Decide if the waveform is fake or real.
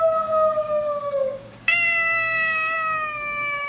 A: fake